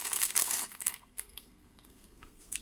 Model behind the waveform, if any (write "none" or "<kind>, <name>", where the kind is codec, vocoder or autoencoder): codec, SNAC